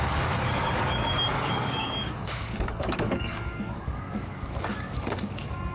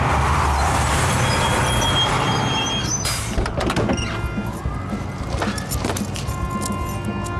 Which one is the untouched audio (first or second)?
second